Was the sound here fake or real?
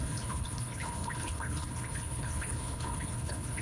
fake